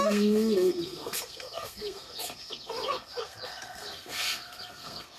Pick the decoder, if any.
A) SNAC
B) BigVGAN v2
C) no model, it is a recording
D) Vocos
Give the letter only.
A